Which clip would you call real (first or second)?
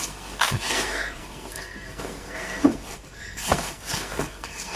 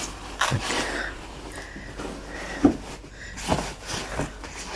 second